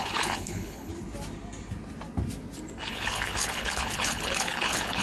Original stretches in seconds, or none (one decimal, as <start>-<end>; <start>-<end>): 0.9-2.9